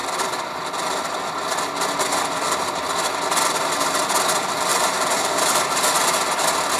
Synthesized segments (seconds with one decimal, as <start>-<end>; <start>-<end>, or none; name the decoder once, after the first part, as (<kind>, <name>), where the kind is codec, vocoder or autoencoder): 4.7-5.6 (vocoder, BigVGAN v2)